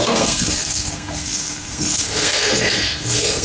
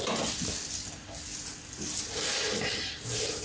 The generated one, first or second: first